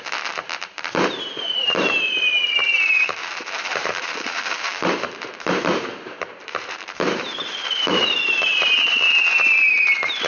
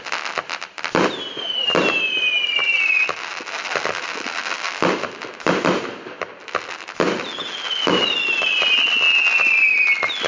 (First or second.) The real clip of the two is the second